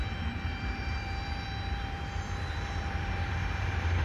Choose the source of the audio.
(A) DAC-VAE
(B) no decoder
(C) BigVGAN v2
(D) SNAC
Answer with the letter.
C